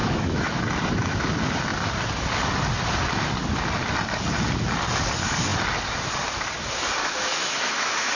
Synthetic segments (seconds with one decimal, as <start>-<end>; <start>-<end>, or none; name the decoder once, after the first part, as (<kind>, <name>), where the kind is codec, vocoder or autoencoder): 0.0-0.6 (autoencoder, DAC-VAE); 7.0-8.1